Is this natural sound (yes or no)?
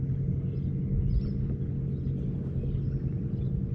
yes